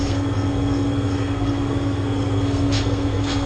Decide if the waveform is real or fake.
fake